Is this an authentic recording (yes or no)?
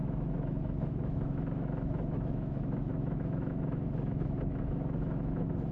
no